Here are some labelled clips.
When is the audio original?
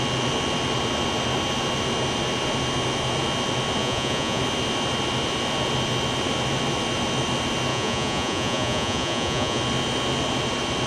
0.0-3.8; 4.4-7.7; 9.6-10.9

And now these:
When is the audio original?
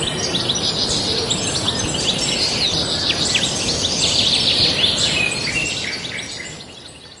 0.0-7.2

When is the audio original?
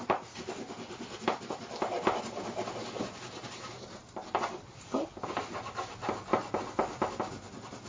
0.5-7.9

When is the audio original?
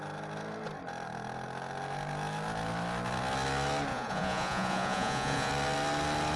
0.0-3.9; 5.5-6.4